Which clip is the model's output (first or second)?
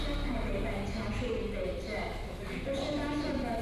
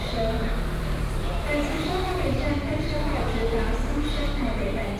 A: second